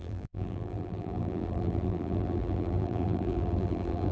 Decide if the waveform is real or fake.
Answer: fake